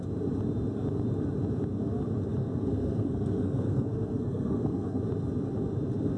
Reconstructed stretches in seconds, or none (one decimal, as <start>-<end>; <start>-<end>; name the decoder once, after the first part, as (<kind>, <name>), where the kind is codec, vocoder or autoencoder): 2.4-5.0 (codec, SNAC)